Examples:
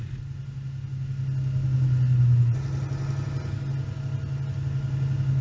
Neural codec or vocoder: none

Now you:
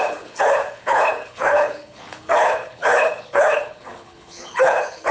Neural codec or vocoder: codec, HILCodec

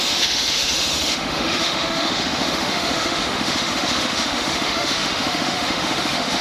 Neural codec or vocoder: autoencoder, DAC-VAE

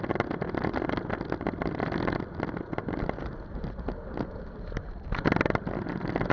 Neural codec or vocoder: none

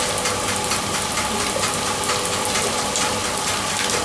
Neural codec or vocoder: none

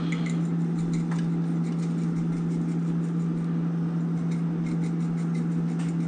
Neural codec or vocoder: none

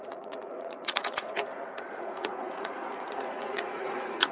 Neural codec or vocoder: vocoder, Vocos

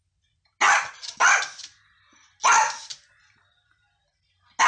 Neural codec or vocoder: none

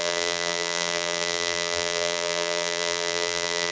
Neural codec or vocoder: vocoder, BigVGAN v2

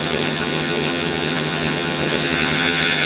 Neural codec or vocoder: vocoder, HiFi-GAN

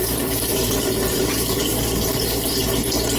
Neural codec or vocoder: vocoder, BigVGAN v2